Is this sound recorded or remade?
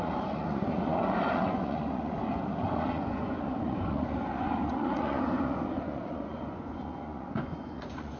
remade